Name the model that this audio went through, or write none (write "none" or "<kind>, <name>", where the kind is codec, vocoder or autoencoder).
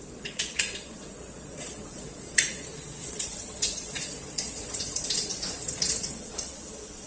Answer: vocoder, Vocos